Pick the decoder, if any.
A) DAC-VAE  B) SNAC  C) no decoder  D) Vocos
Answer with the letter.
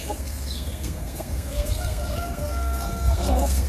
B